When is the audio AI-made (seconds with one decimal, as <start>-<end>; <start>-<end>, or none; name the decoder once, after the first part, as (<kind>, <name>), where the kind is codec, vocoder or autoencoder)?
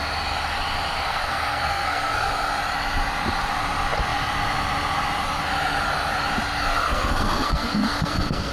1.0-2.3 (codec, SNAC); 6.7-8.5